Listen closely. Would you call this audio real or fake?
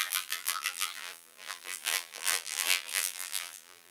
fake